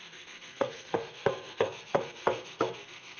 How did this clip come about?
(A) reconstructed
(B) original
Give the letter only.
A